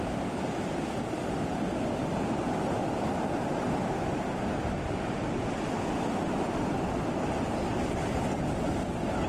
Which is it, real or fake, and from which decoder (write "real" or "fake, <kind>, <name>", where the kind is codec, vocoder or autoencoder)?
fake, vocoder, BigVGAN v2